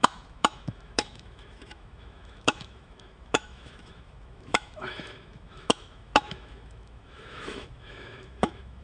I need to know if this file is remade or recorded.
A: remade